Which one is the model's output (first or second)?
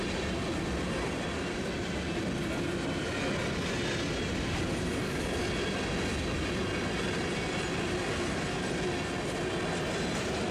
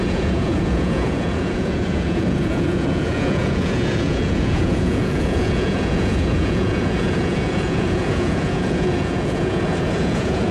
second